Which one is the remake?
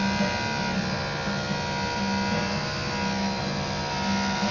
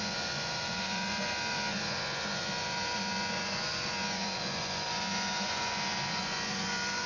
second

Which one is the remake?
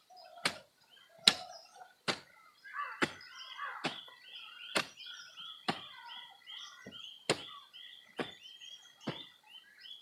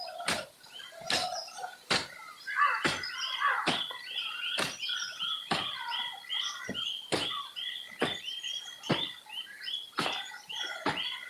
second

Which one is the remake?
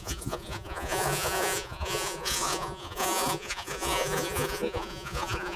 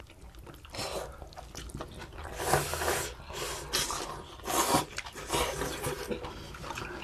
first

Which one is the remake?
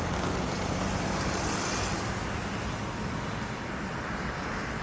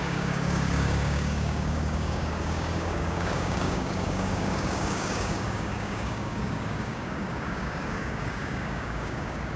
second